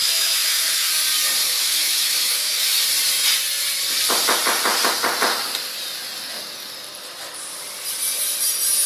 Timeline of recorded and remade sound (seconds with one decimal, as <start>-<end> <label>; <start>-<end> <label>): 0.0-0.9 remade; 0.9-1.4 recorded; 1.4-2.8 remade; 2.8-8.9 recorded